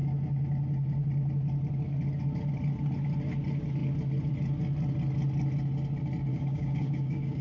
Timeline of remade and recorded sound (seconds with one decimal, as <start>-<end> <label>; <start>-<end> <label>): 0.0-6.3 recorded; 6.3-7.4 remade